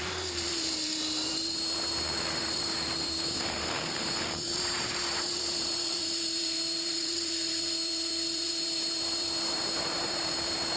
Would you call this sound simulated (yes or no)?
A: yes